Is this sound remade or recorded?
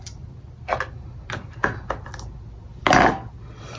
recorded